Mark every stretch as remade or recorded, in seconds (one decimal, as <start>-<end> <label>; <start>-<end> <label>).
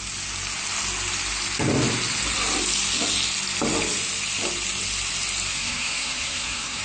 0.0-5.5 recorded; 5.5-6.8 remade